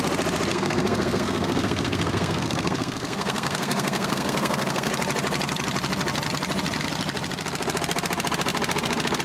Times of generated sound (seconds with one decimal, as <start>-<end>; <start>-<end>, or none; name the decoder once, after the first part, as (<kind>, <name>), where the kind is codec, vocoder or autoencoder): 0.5-4.9 (codec, SNAC)